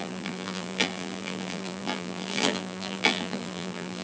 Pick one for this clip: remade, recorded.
remade